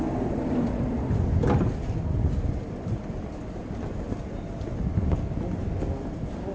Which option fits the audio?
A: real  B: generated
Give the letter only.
A